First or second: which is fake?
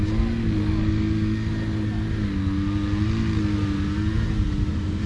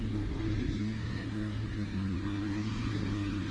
second